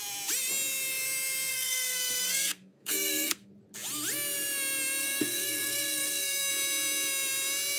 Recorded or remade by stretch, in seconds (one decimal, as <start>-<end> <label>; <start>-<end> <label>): 0.0-1.5 recorded; 1.5-3.5 remade; 3.5-5.0 recorded; 5.0-6.5 remade; 6.5-7.8 recorded